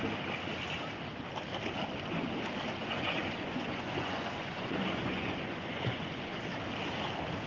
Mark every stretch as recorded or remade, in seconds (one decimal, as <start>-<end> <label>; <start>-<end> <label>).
0.0-2.8 recorded; 2.8-6.4 remade; 6.4-7.5 recorded